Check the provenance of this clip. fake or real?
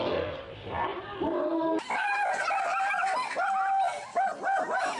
real